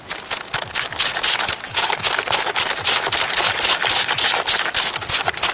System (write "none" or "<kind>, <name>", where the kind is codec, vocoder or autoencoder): none